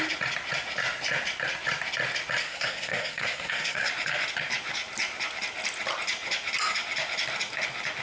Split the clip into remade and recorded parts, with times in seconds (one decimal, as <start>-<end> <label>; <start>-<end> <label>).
0.0-2.4 recorded; 2.4-3.9 remade; 3.9-8.0 recorded